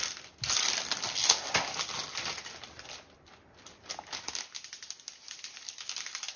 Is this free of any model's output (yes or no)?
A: yes